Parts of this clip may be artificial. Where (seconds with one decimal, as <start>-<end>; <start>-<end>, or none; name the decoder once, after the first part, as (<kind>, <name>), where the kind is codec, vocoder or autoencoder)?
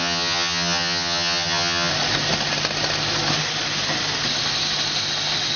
0.0-1.9 (vocoder, HiFi-GAN)